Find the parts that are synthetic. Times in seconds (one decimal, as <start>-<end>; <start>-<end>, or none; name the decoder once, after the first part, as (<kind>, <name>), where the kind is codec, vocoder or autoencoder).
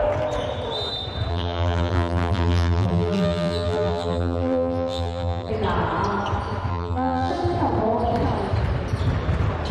1.3-5.5 (vocoder, BigVGAN v2); 6.7-7.3